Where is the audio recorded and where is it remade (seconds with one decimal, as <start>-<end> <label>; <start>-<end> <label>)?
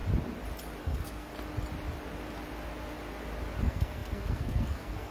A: 0.0-0.8 recorded; 0.8-1.3 remade; 1.3-3.6 recorded; 3.6-5.1 remade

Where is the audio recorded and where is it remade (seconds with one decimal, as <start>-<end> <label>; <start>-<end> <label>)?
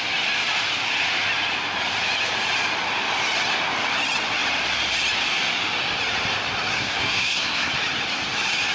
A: 0.0-6.7 recorded; 6.7-7.7 remade; 7.7-8.7 recorded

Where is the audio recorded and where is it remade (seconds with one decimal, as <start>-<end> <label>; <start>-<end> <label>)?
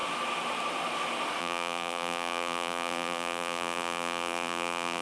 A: 0.0-1.4 recorded; 1.4-5.0 remade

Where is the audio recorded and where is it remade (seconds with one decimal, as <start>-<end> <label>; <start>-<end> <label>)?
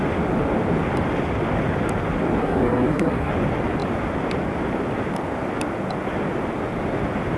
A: 0.0-2.4 recorded; 2.4-3.3 remade; 3.3-7.4 recorded